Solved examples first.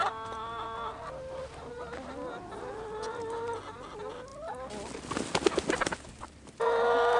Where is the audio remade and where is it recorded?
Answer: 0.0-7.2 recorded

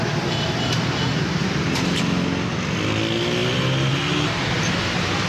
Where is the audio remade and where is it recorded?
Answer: 0.0-1.4 recorded; 1.4-2.0 remade; 2.0-5.3 recorded

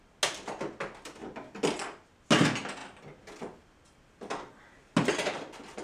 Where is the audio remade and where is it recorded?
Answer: 0.0-5.8 recorded

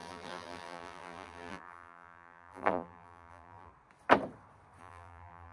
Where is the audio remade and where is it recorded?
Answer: 0.0-3.7 remade; 3.7-4.8 recorded; 4.8-5.5 remade